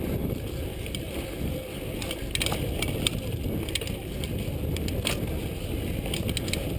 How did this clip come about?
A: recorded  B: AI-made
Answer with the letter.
A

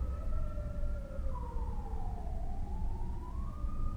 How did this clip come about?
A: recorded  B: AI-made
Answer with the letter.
A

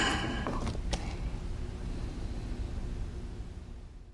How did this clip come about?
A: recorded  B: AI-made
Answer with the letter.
A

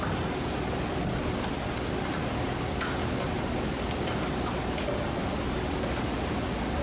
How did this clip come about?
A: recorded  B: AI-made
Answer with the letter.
A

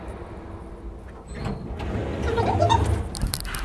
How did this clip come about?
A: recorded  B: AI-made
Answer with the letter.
A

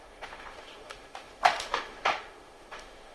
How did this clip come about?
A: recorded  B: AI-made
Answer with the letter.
B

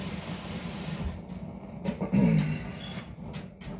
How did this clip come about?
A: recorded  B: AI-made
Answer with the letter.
A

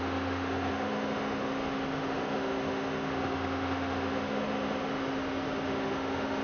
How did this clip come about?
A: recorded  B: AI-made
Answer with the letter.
B